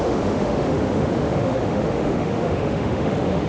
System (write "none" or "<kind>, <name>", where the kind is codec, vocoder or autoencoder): autoencoder, DAC-VAE